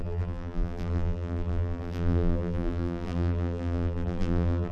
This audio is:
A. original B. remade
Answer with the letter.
B